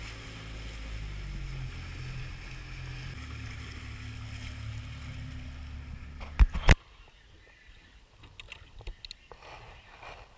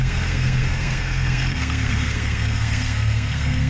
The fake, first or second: second